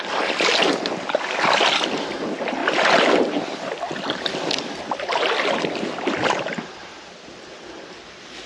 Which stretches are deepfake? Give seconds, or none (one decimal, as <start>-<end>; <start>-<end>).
0.0-2.6; 3.2-8.5